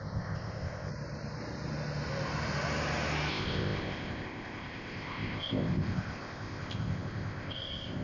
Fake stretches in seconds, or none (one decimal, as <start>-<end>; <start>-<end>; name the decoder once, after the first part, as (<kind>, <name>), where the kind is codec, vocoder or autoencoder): 0.0-0.9 (codec, ZipCodec); 3.3-8.0